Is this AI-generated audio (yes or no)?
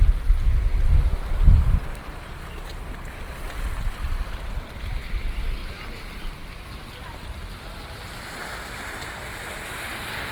no